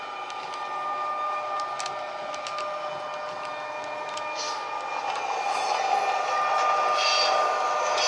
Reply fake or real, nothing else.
real